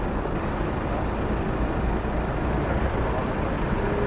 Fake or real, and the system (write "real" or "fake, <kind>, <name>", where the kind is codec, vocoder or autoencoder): real